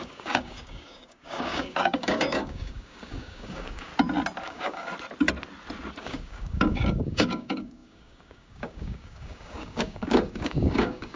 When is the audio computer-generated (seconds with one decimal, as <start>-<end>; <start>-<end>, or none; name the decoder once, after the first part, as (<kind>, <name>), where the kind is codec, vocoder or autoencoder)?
0.0-3.9 (codec, DAC); 4.4-4.9; 6.0-11.2